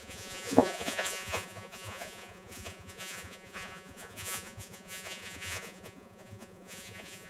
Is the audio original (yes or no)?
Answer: no